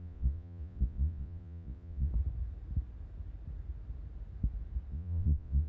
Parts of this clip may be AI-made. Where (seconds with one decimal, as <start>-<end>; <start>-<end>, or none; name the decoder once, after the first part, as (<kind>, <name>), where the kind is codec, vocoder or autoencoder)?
0.0-2.1 (vocoder, Vocos); 4.9-5.7